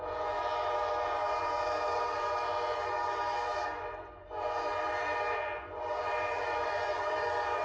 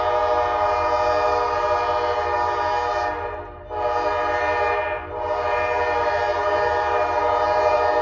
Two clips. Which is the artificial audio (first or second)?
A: first